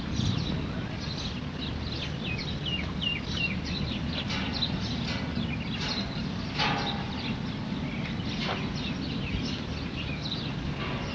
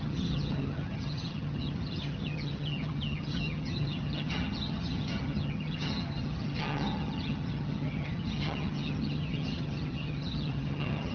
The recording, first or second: first